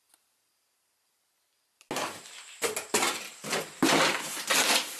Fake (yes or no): no